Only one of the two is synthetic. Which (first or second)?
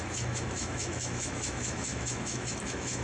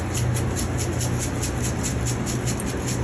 first